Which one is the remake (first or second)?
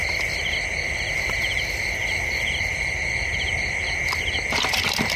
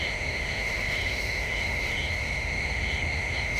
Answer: second